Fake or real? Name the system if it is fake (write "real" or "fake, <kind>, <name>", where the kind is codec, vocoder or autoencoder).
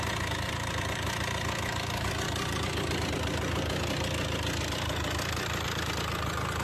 real